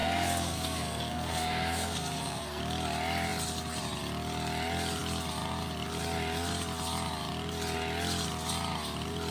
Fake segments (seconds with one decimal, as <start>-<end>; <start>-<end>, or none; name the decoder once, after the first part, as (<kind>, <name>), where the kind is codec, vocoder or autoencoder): 0.0-2.6 (codec, SNAC)